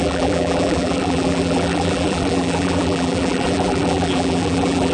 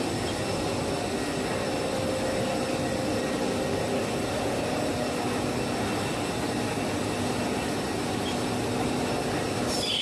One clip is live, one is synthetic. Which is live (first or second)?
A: second